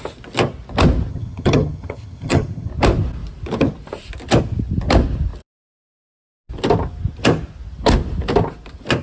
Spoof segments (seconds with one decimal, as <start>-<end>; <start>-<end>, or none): 1.1-2.7